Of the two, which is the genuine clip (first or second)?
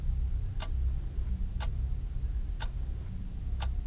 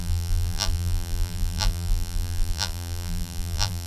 first